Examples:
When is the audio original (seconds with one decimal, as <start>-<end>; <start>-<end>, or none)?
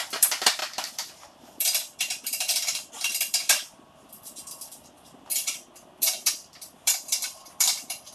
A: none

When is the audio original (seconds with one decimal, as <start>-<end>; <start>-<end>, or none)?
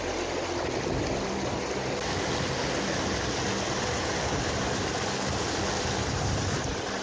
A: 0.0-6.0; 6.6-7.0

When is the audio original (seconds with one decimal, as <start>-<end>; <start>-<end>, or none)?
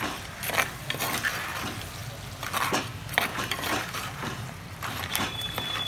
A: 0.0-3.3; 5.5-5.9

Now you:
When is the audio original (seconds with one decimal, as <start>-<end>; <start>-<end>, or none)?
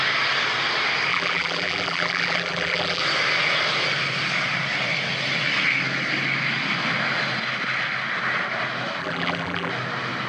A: 0.0-1.1; 3.0-9.0; 9.7-10.3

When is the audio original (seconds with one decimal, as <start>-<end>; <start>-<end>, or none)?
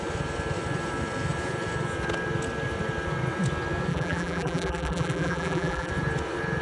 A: 0.0-3.9; 5.9-6.6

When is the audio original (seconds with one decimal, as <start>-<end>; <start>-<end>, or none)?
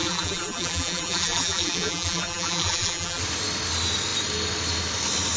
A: 3.2-5.4